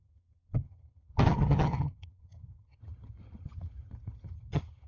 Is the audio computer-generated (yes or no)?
yes